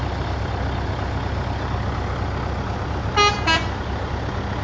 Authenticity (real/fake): real